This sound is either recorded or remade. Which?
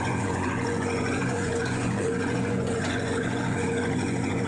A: remade